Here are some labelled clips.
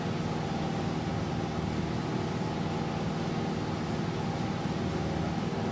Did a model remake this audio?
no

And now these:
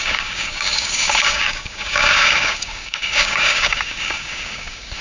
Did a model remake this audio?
yes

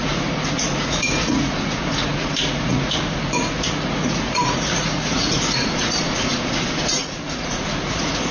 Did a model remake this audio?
yes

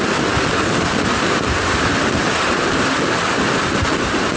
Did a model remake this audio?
no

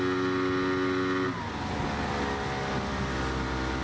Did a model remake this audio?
no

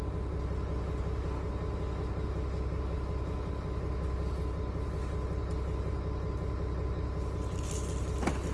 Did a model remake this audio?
no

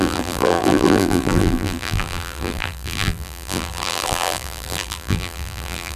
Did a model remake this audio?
yes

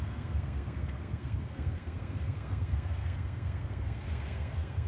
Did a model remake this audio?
yes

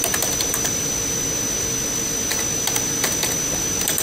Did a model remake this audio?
no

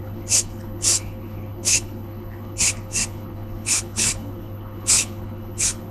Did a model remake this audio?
yes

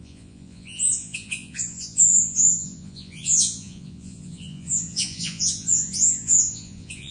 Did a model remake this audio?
yes